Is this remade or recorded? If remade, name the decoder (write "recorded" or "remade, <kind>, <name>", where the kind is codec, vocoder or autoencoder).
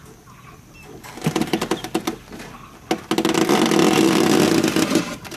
recorded